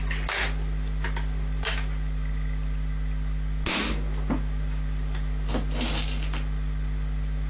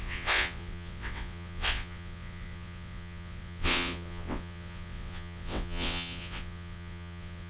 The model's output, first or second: second